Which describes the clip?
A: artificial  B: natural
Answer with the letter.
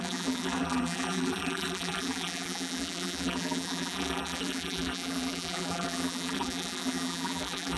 A